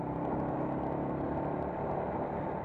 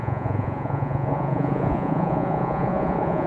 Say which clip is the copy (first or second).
second